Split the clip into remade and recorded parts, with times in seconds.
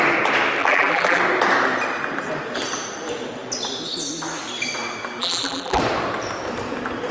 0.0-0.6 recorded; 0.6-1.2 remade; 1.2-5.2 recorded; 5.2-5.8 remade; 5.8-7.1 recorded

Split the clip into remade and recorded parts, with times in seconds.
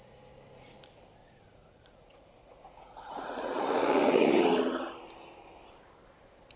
0.0-1.2 recorded; 1.2-4.4 remade; 4.4-6.6 recorded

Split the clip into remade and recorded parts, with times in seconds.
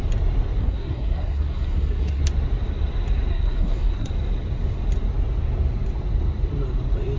0.0-0.6 recorded; 0.6-2.2 remade; 2.2-3.3 recorded; 3.3-4.1 remade; 4.1-7.2 recorded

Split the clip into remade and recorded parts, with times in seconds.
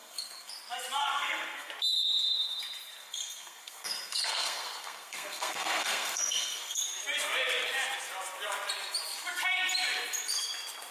0.0-0.5 remade; 0.5-1.0 recorded; 1.0-1.7 remade; 1.7-3.0 recorded; 3.0-6.8 remade; 6.8-10.9 recorded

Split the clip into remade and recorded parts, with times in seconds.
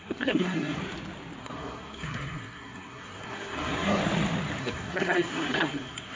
0.0-0.8 remade; 0.8-1.4 recorded; 1.4-4.0 remade; 4.0-4.6 recorded; 4.6-6.2 remade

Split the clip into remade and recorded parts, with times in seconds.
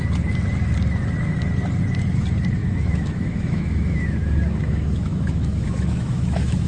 0.0-2.6 recorded; 2.6-6.7 remade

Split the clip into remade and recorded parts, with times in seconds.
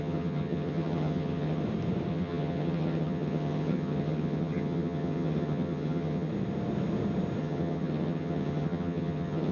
0.0-1.6 remade; 1.6-2.1 recorded; 2.1-6.3 remade; 6.3-7.4 recorded; 7.4-9.5 remade